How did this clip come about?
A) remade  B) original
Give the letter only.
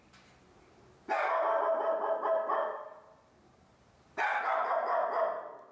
B